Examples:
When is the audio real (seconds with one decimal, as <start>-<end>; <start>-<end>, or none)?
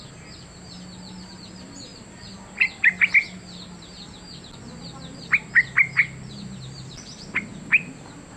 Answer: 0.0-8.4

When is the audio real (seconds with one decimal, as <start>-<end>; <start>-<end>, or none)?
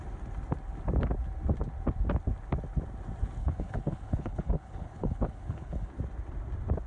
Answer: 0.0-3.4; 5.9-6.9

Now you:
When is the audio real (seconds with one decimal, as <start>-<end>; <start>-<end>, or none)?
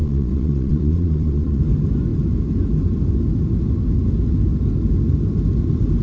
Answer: 1.6-6.0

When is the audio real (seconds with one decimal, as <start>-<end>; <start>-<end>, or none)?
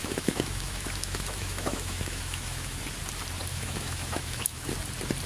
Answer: 2.8-3.5; 4.7-5.3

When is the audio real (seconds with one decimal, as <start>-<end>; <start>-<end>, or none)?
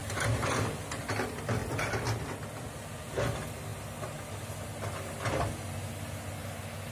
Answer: 0.6-6.9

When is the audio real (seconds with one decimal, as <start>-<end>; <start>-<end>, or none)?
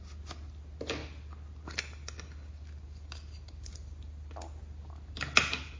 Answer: 0.0-5.8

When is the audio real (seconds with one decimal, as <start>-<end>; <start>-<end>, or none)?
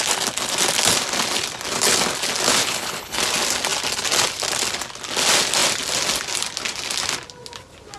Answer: 0.0-2.6; 3.2-8.0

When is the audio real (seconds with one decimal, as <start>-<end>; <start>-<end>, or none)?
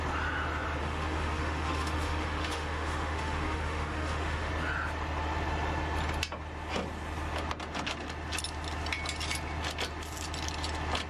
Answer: 0.0-0.8; 4.5-11.1